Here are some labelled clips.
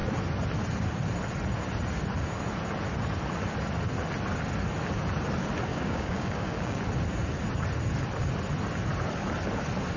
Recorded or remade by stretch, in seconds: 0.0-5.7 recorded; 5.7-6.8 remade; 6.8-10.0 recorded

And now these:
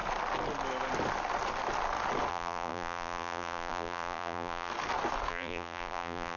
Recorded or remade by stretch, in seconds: 0.0-2.3 recorded; 2.3-4.7 remade; 4.7-5.3 recorded; 5.3-6.4 remade

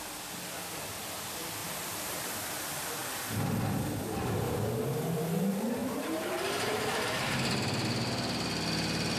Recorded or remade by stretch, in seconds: 0.0-1.6 recorded; 1.6-2.2 remade; 2.2-5.8 recorded; 5.8-6.4 remade; 6.4-9.2 recorded

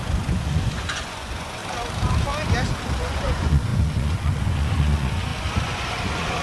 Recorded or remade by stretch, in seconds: 0.0-1.6 remade; 1.6-3.0 recorded; 3.0-6.4 remade

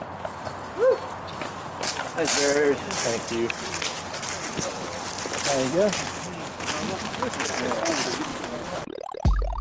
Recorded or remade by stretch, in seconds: 0.0-8.3 recorded; 8.3-8.8 remade; 8.8-9.6 recorded

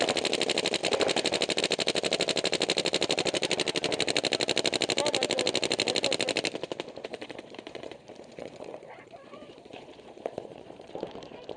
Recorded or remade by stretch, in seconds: 0.0-7.1 recorded; 7.1-10.9 remade; 10.9-11.6 recorded

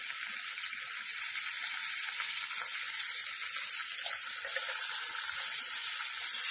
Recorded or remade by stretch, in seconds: 0.0-6.5 recorded

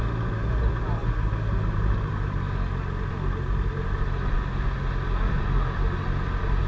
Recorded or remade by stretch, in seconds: 0.0-6.7 recorded